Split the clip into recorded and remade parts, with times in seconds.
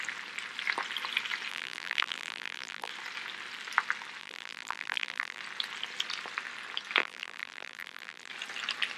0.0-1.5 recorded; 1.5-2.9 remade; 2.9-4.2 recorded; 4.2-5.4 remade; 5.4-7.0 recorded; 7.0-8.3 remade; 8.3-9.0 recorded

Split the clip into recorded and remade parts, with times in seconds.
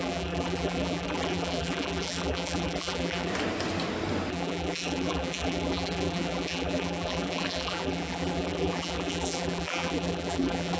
0.0-3.3 remade; 3.3-4.3 recorded; 4.3-10.8 remade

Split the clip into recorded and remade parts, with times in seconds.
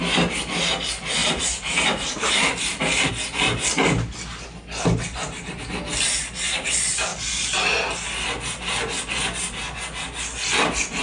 0.0-1.2 recorded; 1.2-3.1 remade; 3.1-5.1 recorded; 5.1-5.6 remade; 5.6-11.0 recorded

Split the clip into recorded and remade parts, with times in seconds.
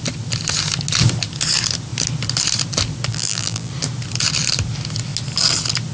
0.0-3.1 recorded; 3.1-3.7 remade; 3.7-5.9 recorded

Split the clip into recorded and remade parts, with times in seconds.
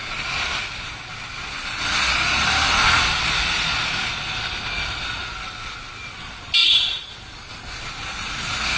0.0-6.6 recorded; 6.6-7.1 remade; 7.1-8.8 recorded